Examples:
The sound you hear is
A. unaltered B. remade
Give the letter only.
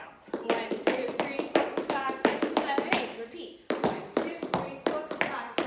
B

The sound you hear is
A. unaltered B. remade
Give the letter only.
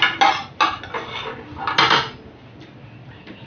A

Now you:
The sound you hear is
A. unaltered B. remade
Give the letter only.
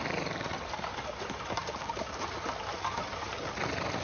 A